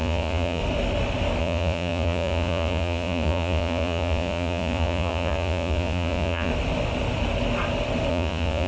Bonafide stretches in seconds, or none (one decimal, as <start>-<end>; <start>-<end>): 0.6-1.4; 6.5-8.1